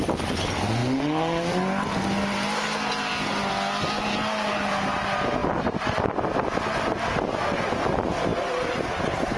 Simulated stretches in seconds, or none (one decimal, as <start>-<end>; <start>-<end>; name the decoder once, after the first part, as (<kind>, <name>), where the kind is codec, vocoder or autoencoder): none